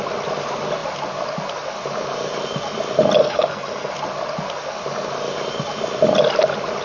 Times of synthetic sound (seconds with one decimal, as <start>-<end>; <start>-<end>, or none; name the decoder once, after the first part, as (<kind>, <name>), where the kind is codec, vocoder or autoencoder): 3.2-3.9 (codec, SNAC)